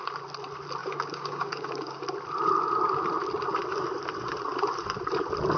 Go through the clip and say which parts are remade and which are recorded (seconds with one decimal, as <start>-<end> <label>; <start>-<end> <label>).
0.0-0.8 recorded; 0.8-2.0 remade; 2.0-5.6 recorded